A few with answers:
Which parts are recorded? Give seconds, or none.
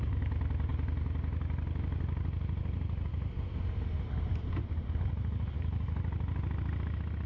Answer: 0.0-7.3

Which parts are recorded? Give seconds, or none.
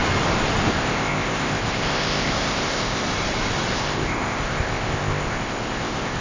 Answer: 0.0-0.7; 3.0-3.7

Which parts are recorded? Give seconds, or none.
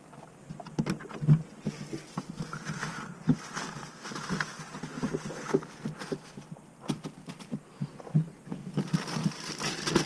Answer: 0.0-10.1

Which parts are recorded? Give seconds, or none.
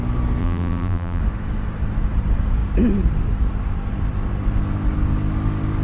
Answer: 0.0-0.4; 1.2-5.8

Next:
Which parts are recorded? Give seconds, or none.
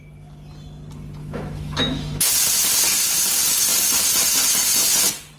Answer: 0.0-1.2; 2.3-5.4